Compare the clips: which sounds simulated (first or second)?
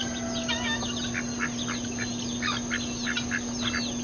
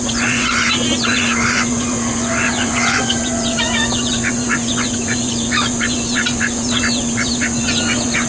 second